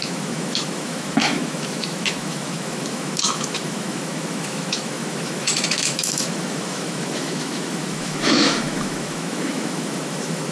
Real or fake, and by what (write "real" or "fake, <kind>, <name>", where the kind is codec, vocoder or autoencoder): fake, autoencoder, DAC-VAE